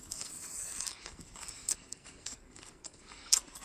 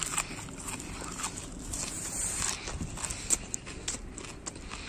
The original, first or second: second